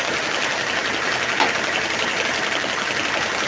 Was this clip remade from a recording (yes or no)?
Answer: no